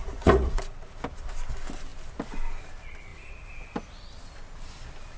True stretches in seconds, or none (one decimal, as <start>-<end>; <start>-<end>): 0.6-5.2